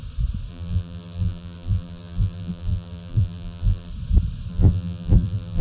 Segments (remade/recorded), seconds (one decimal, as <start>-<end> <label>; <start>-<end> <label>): 0.0-0.5 recorded; 0.5-3.9 remade; 3.9-4.5 recorded; 4.5-5.6 remade